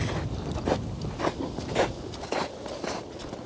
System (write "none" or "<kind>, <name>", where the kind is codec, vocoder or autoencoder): none